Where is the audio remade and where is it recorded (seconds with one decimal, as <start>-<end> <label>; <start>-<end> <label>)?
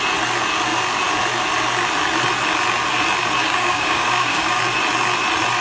0.0-3.4 recorded; 3.4-4.6 remade; 4.6-5.6 recorded